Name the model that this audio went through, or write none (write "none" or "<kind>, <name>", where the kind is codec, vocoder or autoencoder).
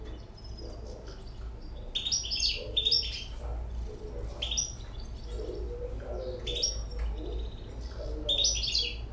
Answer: none